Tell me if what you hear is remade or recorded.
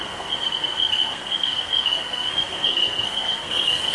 remade